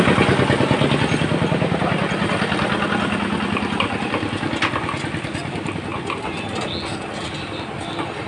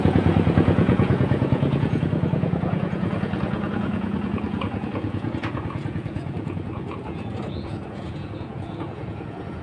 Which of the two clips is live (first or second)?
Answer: first